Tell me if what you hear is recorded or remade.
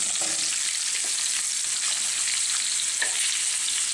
recorded